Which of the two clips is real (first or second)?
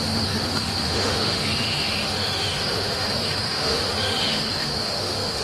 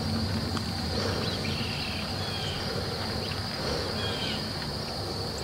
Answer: second